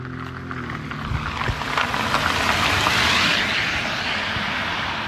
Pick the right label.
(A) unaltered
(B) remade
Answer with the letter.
A